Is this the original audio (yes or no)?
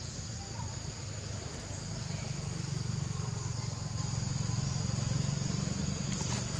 yes